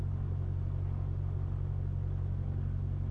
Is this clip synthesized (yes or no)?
no